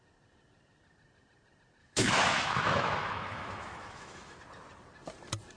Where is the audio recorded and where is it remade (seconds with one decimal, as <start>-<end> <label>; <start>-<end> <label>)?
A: 0.0-1.8 recorded; 1.8-4.4 remade; 4.4-5.6 recorded